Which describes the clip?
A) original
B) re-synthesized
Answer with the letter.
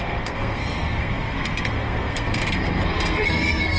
B